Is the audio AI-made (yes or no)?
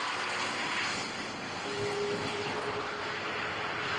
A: no